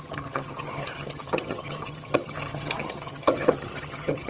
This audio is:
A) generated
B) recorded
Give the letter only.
A